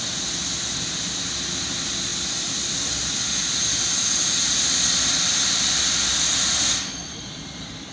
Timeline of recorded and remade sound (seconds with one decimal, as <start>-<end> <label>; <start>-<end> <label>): 0.0-7.9 recorded